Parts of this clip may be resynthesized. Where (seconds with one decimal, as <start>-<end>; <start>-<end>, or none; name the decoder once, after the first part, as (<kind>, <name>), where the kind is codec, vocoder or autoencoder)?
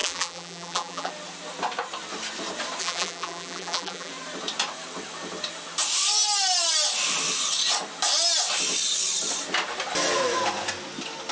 0.0-1.1 (vocoder, BigVGAN v2); 2.8-4.1